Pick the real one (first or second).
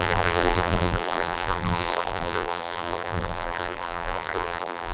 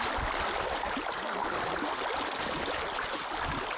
second